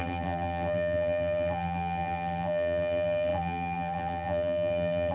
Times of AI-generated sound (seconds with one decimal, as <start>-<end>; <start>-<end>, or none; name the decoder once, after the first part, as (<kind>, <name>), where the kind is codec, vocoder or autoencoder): 0.0-5.1 (vocoder, BigVGAN v2)